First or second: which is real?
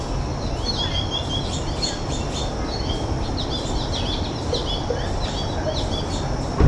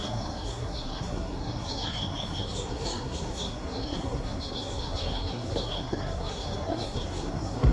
first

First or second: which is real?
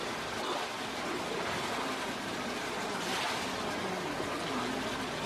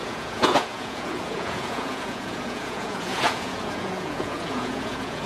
first